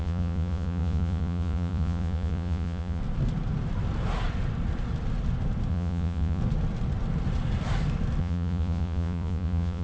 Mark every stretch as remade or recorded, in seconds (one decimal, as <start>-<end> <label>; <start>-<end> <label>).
0.0-3.0 remade; 3.0-5.7 recorded; 5.7-6.4 remade; 6.4-8.2 recorded; 8.2-9.8 remade